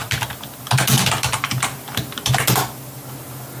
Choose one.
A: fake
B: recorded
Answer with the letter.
B